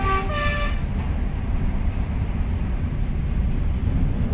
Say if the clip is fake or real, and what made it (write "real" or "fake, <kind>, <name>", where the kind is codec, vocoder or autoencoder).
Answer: real